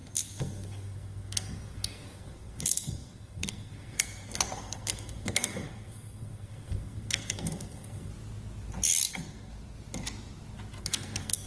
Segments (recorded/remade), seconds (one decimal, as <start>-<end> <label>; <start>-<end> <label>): 0.0-8.1 remade; 8.1-9.1 recorded; 9.1-9.5 remade; 9.5-10.8 recorded; 10.8-11.5 remade